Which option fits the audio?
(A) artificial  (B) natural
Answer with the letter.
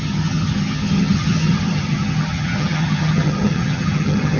A